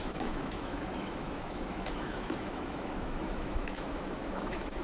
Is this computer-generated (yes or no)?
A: yes